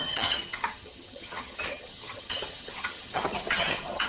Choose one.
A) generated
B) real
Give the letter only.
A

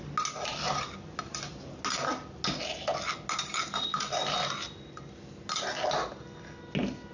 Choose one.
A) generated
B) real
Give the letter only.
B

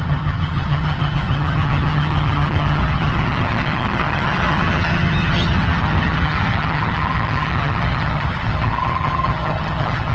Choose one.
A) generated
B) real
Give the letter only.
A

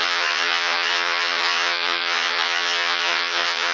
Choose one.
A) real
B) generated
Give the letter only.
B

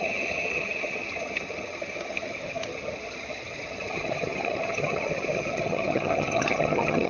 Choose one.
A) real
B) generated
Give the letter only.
B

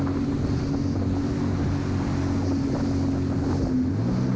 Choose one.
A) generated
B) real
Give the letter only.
B